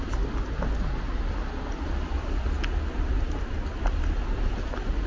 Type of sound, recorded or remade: recorded